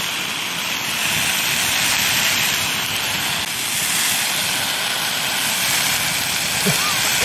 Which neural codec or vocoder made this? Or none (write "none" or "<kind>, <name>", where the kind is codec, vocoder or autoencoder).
none